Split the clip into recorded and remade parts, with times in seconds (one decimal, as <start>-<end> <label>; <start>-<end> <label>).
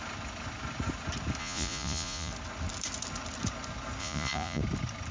0.0-1.4 recorded; 1.4-2.3 remade; 2.3-4.0 recorded; 4.0-4.6 remade; 4.6-5.1 recorded